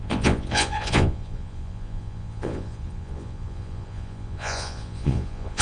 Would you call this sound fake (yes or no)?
yes